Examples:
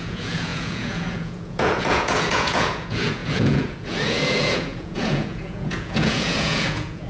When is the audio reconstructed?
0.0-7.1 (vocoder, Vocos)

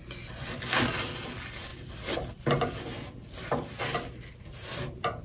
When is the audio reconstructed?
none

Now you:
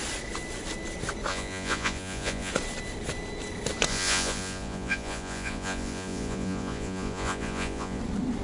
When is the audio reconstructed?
1.3-2.5 (vocoder, Vocos); 3.9-8.0